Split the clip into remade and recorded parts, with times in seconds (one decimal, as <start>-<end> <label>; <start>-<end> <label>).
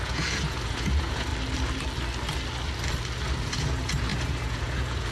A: 0.0-1.3 remade; 1.3-3.4 recorded; 3.4-5.1 remade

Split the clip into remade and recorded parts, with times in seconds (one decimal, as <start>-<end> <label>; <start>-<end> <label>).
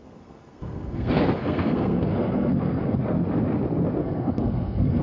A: 0.0-3.0 remade; 3.0-4.0 recorded; 4.0-5.0 remade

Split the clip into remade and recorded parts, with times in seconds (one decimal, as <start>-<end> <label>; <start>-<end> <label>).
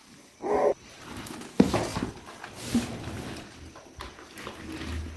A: 0.0-5.2 recorded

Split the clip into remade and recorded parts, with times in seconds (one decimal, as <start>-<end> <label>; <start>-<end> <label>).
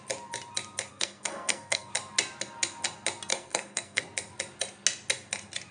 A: 0.0-0.9 recorded; 0.9-1.9 remade; 1.9-3.3 recorded; 3.3-4.0 remade; 4.0-5.7 recorded